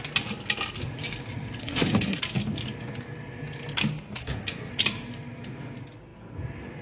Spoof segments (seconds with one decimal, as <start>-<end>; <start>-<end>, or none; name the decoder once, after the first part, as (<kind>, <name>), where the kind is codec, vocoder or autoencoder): 1.6-2.2 (codec, SNAC); 4.2-4.7